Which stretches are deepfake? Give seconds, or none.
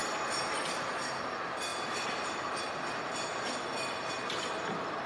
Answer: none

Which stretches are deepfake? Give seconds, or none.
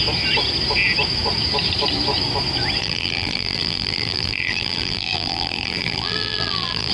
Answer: 2.8-6.9 (vocoder, BigVGAN v2)